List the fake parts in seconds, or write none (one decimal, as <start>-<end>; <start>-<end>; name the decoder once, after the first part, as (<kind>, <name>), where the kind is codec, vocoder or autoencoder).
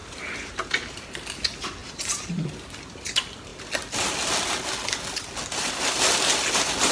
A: 0.0-0.7 (vocoder, BigVGAN v2); 1.8-2.5